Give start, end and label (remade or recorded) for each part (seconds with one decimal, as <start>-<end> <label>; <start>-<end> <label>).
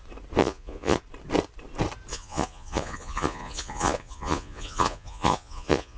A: 0.0-0.4 recorded; 0.4-1.0 remade; 1.0-2.1 recorded; 2.1-6.0 remade